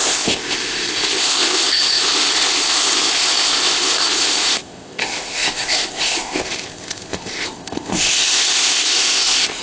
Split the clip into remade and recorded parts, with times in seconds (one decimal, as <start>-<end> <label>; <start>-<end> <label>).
0.0-9.6 remade